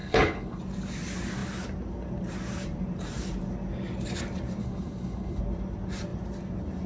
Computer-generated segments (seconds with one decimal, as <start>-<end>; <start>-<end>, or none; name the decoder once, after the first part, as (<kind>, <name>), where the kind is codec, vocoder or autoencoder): 0.0-0.6 (codec, HILCodec); 4.6-5.4